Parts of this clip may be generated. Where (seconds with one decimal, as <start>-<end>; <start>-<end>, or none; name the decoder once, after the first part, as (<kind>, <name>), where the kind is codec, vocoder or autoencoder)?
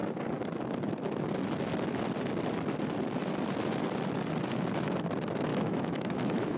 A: 5.5-6.6 (autoencoder, DAC-VAE)